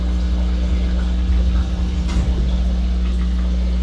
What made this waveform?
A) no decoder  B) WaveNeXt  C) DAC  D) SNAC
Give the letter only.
A